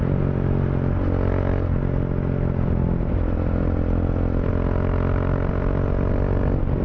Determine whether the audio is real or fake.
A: real